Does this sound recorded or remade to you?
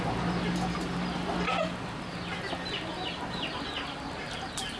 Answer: recorded